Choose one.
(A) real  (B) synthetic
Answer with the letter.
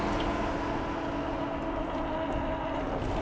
A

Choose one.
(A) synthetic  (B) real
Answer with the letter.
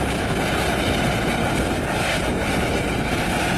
B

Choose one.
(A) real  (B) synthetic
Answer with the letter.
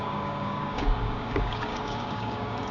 B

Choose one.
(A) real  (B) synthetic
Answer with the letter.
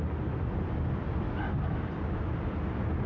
A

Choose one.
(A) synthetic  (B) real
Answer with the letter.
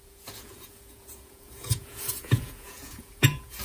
A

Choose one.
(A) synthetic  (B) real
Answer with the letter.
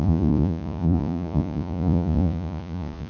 A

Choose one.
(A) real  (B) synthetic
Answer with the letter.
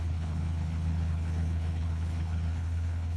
B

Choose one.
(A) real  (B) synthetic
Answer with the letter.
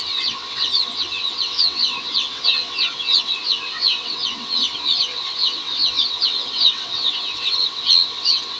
B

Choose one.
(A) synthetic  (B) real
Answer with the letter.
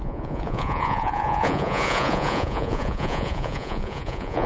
A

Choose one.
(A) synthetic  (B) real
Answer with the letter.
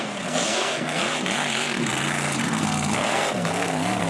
A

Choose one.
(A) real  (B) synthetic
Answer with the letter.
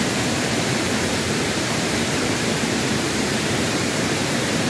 B